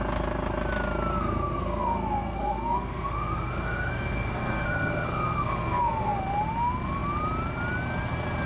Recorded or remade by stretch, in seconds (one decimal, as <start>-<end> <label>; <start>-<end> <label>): 0.0-1.1 recorded; 1.1-6.2 remade; 6.2-8.5 recorded